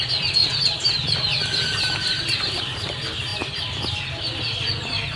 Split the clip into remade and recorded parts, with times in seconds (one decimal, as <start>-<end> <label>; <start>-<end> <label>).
0.0-5.2 remade

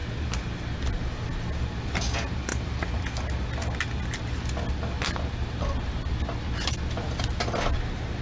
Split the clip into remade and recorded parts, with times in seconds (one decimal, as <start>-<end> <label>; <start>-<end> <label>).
0.0-8.2 recorded

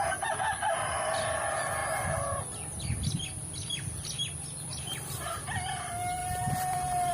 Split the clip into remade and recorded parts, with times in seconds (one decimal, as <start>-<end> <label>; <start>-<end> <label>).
0.0-4.9 recorded; 4.9-5.4 remade; 5.4-6.2 recorded; 6.2-7.1 remade

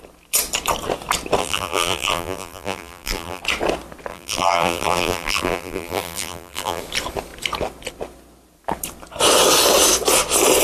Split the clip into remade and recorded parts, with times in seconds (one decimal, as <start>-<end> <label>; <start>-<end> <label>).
0.0-1.4 recorded; 1.4-3.4 remade; 3.4-4.1 recorded; 4.1-6.8 remade; 6.8-10.6 recorded

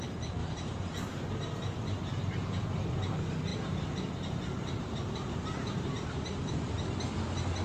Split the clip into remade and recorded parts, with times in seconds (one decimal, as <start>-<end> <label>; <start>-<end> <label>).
0.0-0.4 recorded; 0.4-1.2 remade; 1.2-3.5 recorded; 3.5-6.5 remade; 6.5-7.6 recorded